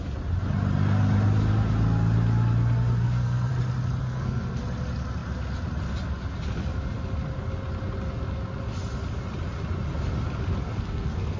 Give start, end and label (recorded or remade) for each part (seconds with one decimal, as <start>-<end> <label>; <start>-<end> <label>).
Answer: 0.0-3.0 recorded; 3.0-3.5 remade; 3.5-4.0 recorded; 4.0-4.6 remade; 4.6-10.6 recorded; 10.6-11.4 remade